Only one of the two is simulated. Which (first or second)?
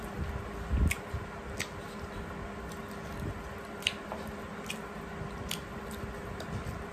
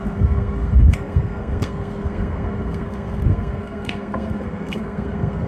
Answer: second